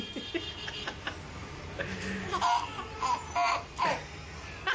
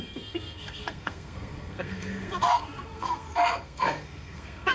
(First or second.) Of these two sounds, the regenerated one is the second